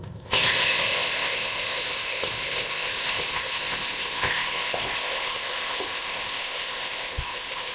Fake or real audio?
fake